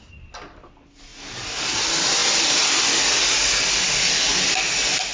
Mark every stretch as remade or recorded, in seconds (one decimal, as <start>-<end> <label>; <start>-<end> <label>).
0.0-5.1 recorded